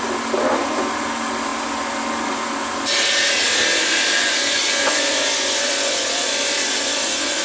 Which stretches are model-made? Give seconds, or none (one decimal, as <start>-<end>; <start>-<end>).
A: 3.7-7.4